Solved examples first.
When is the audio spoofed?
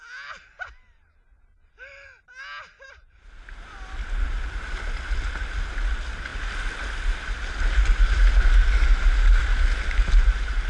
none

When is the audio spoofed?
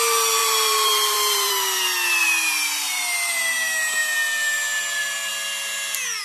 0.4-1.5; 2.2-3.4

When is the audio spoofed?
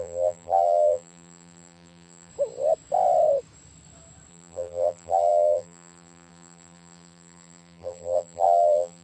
0.0-2.3; 4.3-9.0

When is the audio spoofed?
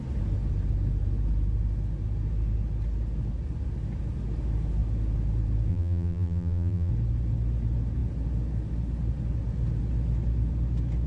5.7-6.9